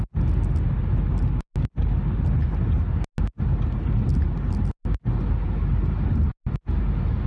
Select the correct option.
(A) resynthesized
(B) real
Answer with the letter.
B